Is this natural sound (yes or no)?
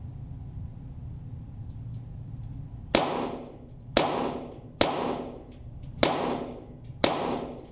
yes